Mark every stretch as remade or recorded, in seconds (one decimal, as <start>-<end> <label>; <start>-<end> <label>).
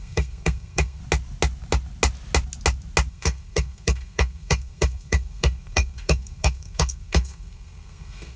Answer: 0.0-1.0 remade; 1.0-3.1 recorded; 3.1-8.4 remade